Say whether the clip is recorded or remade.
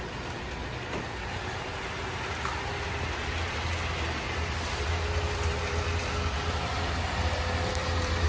recorded